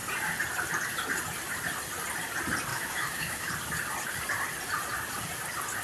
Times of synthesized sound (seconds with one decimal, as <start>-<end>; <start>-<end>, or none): 2.7-3.5